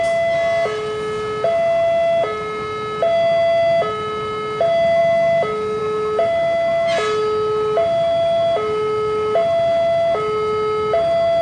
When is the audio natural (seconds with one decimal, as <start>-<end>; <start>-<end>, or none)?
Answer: 0.0-11.4